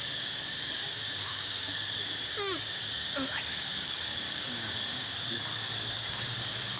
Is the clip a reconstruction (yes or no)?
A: yes